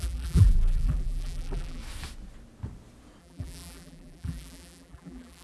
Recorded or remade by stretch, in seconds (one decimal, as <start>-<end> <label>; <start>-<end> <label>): 0.0-1.8 remade; 1.8-3.2 recorded; 3.2-5.4 remade